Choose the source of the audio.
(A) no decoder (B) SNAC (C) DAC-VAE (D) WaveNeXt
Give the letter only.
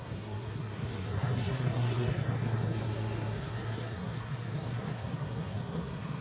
B